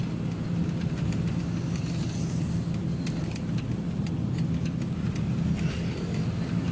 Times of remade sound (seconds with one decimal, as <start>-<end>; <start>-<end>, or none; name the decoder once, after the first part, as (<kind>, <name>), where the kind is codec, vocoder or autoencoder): none